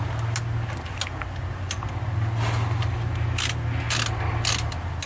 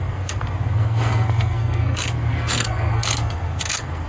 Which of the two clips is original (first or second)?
first